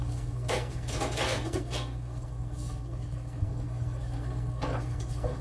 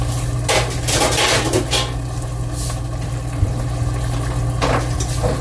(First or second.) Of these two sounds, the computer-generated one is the first